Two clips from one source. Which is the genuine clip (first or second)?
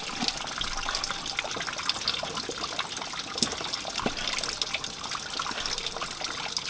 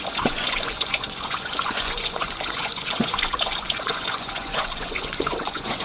first